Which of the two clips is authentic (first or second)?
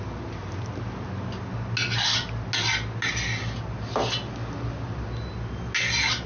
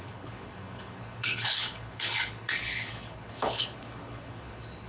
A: first